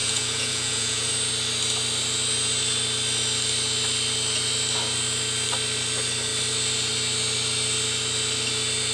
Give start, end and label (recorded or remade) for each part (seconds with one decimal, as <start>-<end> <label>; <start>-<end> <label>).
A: 0.0-1.1 remade; 1.1-8.9 recorded